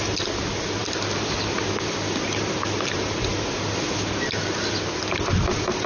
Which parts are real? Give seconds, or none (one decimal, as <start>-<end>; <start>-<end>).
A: 0.0-5.9